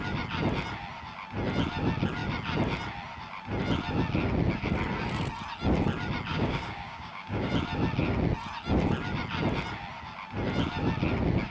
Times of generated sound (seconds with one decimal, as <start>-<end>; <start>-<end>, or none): 6.3-7.5